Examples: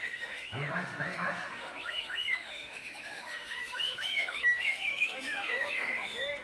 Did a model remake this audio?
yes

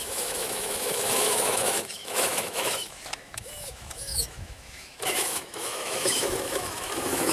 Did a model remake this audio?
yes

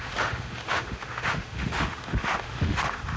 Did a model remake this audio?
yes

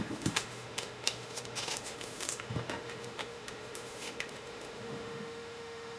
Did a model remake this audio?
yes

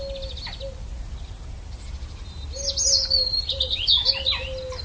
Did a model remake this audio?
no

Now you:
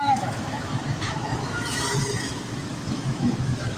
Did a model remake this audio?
yes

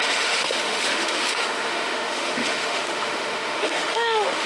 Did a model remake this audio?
yes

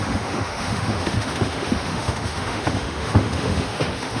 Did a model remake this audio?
yes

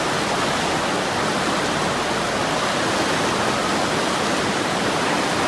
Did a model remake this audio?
no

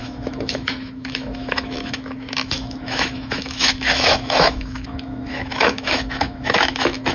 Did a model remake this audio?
yes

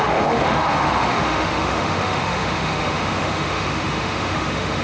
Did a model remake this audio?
yes